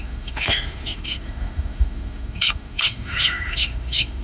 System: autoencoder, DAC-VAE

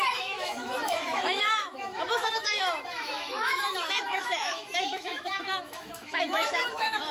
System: autoencoder, DAC-VAE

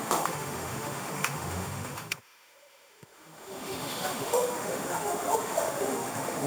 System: autoencoder, DAC-VAE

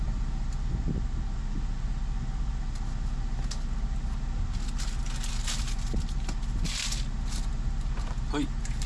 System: none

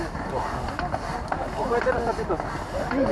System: none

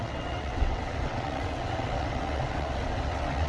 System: vocoder, WaveNeXt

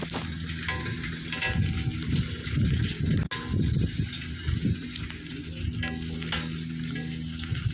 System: none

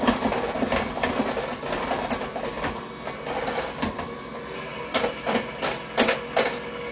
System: none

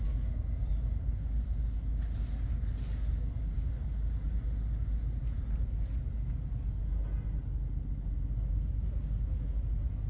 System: none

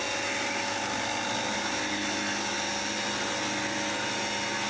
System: none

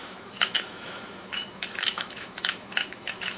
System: autoencoder, DAC-VAE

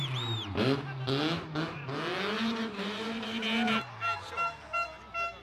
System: none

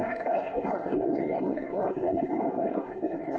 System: codec, SNAC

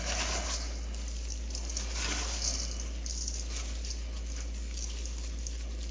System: none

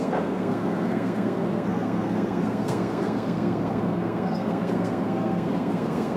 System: codec, SNAC